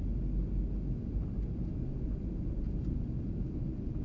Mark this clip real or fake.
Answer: real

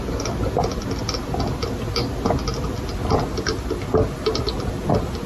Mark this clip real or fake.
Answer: real